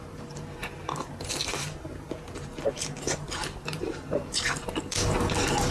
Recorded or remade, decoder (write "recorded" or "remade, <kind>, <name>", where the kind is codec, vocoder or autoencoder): remade, vocoder, BigVGAN v2